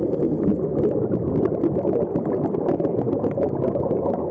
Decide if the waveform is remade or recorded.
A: recorded